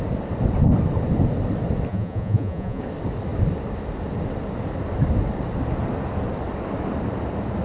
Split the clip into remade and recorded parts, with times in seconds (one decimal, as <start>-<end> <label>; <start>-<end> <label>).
0.0-1.9 recorded; 1.9-2.8 remade; 2.8-7.6 recorded